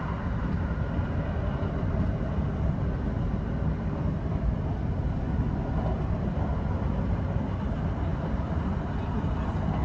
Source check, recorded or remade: recorded